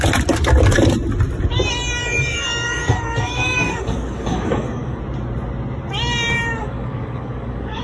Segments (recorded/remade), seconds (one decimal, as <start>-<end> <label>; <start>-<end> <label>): 0.0-2.0 recorded; 2.0-5.0 remade; 5.0-6.6 recorded; 6.6-7.8 remade